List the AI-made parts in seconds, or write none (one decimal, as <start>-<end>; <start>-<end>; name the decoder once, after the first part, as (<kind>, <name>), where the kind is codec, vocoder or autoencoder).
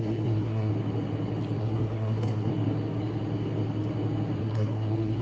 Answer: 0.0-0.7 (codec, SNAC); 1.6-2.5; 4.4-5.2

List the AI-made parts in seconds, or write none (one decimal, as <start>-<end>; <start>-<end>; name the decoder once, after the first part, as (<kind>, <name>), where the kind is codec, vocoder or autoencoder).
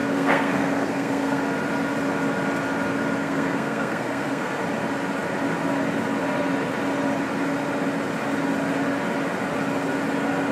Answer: 0.0-1.4 (codec, SNAC); 3.2-4.6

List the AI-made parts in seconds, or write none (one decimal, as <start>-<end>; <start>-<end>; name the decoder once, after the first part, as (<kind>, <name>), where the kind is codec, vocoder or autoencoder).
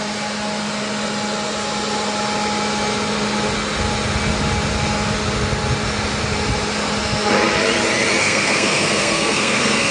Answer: 8.2-9.9 (codec, SNAC)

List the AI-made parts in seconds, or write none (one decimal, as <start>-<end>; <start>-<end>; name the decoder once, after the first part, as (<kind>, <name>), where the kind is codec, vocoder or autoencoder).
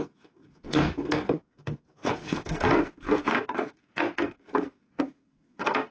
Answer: 0.0-5.9 (codec, SNAC)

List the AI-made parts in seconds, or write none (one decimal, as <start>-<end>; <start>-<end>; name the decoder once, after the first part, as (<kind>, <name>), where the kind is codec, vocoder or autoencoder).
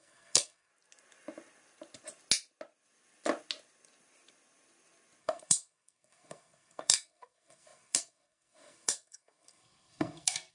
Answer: 0.0-0.7 (codec, SNAC); 5.2-10.5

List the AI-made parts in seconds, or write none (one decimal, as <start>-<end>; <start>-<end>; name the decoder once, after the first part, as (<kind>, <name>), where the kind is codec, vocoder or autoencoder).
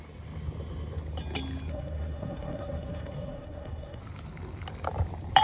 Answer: 1.7-4.0 (codec, SNAC)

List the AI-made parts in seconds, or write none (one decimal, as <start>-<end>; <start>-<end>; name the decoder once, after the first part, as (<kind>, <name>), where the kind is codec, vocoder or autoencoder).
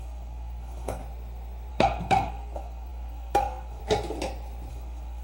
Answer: 0.0-1.0 (codec, SNAC); 1.7-3.8; 4.7-5.2